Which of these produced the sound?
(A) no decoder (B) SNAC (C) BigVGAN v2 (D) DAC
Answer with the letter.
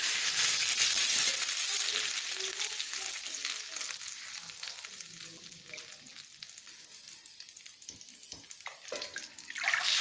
A